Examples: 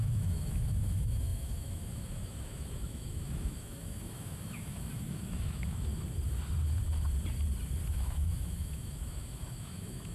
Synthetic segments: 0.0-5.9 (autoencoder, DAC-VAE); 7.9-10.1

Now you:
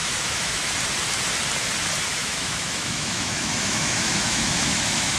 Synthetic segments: 0.0-0.7 (autoencoder, DAC-VAE); 2.1-5.2

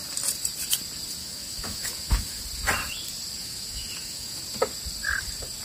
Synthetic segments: 1.2-2.4 (autoencoder, DAC-VAE); 3.4-4.4

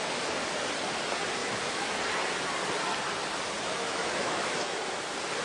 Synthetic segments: 1.4-1.9 (autoencoder, DAC-VAE); 3.7-4.8

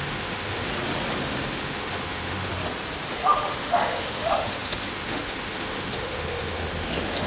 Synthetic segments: 0.0-0.7 (autoencoder, DAC-VAE); 1.2-2.5; 3.1-7.3

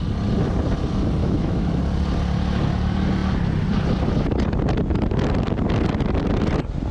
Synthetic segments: 1.2-1.8 (autoencoder, DAC-VAE)

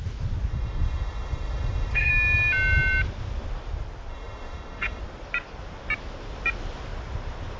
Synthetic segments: 0.5-2.1 (autoencoder, DAC-VAE); 4.1-5.0